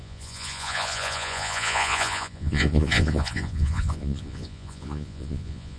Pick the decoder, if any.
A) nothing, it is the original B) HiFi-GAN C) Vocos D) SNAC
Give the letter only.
C